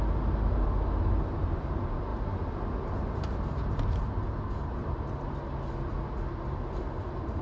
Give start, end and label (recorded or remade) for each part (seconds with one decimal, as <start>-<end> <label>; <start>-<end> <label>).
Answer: 0.0-7.4 recorded